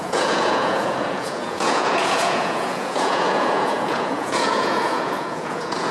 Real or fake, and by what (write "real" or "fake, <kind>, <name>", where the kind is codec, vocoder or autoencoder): fake, vocoder, Vocos